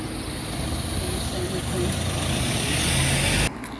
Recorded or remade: recorded